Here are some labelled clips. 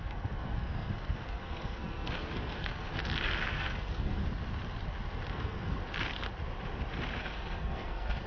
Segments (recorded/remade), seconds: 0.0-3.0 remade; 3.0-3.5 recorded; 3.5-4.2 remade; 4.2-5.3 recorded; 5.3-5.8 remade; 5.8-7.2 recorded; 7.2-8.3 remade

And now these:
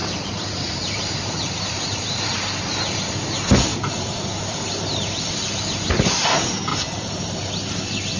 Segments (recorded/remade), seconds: 0.0-2.8 remade; 2.8-3.7 recorded; 3.7-5.9 remade; 5.9-6.7 recorded; 6.7-7.5 remade; 7.5-8.2 recorded